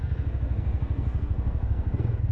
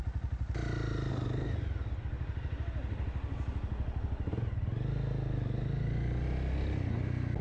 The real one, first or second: second